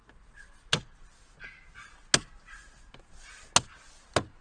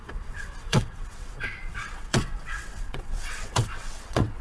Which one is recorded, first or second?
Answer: first